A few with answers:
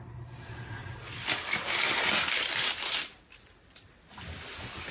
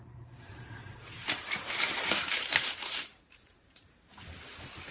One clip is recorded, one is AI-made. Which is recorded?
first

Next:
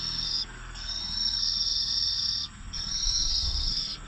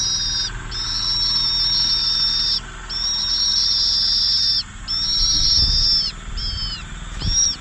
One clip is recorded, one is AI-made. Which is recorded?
second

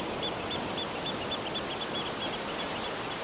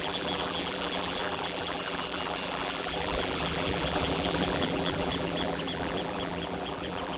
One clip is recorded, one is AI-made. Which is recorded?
first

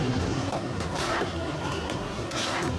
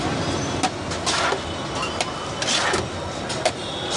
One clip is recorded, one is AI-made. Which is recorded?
second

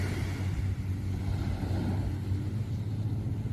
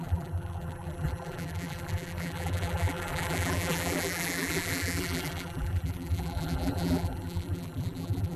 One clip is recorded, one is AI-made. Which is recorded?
first